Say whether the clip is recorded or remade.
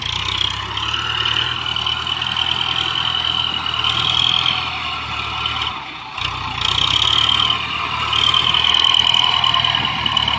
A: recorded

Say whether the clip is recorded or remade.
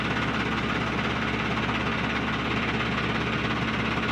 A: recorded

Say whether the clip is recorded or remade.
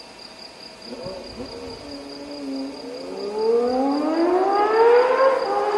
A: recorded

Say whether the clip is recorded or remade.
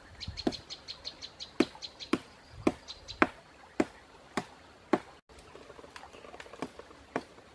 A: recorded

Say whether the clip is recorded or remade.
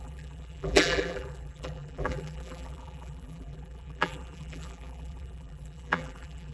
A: remade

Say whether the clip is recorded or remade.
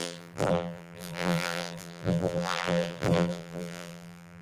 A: remade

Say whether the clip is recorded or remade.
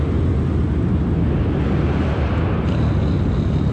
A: recorded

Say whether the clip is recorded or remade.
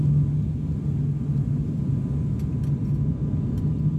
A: recorded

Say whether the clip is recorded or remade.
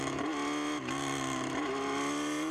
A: recorded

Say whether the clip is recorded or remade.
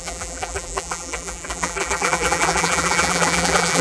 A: remade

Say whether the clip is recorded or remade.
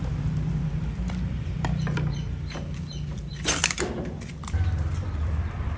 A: remade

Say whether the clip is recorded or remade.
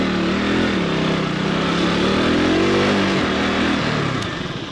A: recorded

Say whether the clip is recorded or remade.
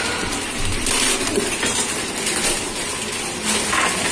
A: recorded